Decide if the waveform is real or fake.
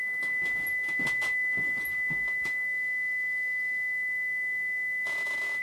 real